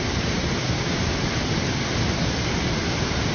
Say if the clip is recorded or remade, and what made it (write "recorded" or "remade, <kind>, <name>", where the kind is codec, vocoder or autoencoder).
remade, vocoder, BigVGAN v2